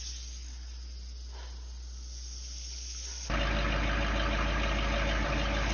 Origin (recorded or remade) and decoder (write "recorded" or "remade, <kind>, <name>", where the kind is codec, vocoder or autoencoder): recorded